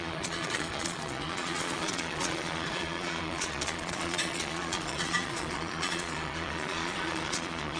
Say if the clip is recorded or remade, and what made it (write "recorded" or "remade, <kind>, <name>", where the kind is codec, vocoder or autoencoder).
remade, vocoder, Vocos